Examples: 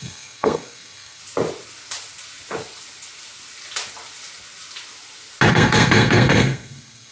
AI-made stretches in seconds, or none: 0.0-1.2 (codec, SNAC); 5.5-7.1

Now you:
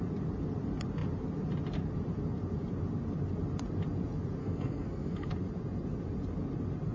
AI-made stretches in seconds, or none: 4.4-5.3 (codec, SNAC)

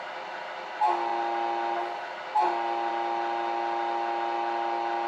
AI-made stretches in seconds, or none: none

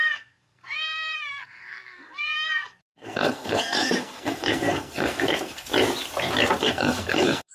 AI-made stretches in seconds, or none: 0.0-5.7 (codec, SNAC); 6.6-7.5

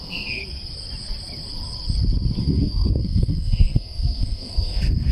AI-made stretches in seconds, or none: 0.0-0.4 (codec, SNAC); 2.4-5.1

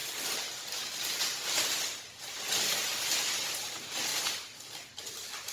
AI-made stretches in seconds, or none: none

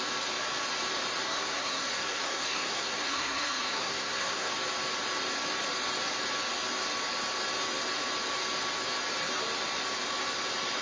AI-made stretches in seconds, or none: 1.2-4.5 (codec, SNAC)